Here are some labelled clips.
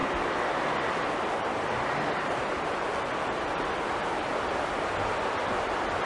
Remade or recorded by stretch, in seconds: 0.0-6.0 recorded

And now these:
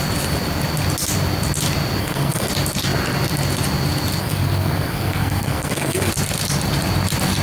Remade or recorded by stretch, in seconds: 0.0-2.0 recorded; 2.0-2.5 remade; 2.5-4.2 recorded; 4.2-6.1 remade; 6.1-7.4 recorded

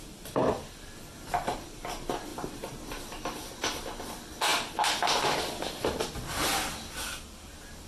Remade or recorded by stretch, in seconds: 0.0-0.5 remade; 0.5-2.3 recorded; 2.3-3.0 remade; 3.0-7.9 recorded

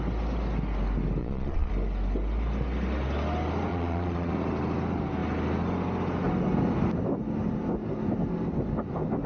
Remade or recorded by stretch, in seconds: 0.0-1.2 recorded; 1.2-1.7 remade; 1.7-3.7 recorded; 3.7-4.3 remade; 4.3-9.3 recorded

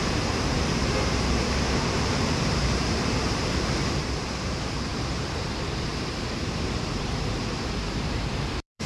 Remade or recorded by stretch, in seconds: 0.0-5.9 remade; 5.9-6.4 recorded; 6.4-8.9 remade